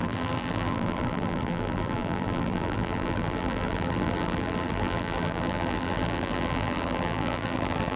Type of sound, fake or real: fake